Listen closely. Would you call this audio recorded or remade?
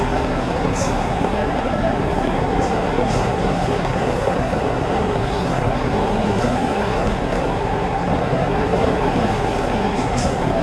remade